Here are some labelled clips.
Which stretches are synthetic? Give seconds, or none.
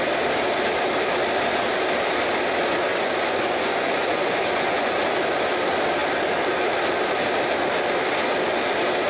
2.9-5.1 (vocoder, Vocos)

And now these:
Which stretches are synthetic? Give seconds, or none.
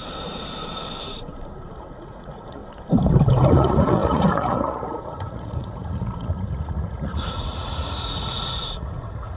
1.9-2.6 (vocoder, Vocos); 3.5-9.4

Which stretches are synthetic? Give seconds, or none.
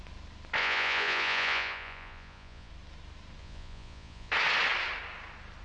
0.6-2.7 (vocoder, Vocos); 3.4-4.3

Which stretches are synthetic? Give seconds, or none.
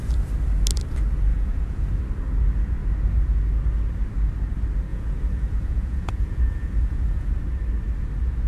1.3-2.0 (vocoder, Vocos); 4.9-7.3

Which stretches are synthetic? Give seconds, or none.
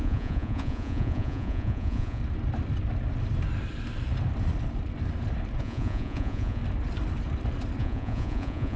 0.0-2.2 (vocoder, Vocos); 5.6-6.6; 7.8-8.8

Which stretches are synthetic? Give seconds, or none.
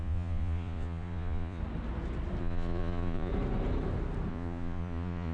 0.0-1.6 (vocoder, Vocos); 2.4-3.3; 4.3-5.3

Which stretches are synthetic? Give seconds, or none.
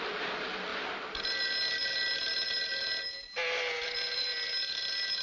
none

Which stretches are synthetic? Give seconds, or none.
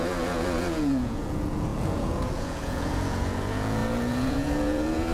0.0-5.1 (vocoder, Vocos)